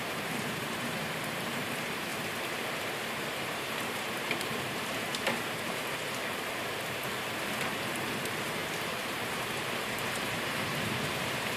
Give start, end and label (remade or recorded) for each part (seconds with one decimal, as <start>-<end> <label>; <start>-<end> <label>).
0.0-2.1 remade; 2.1-3.3 recorded; 3.3-6.0 remade; 6.0-7.8 recorded; 7.8-11.6 remade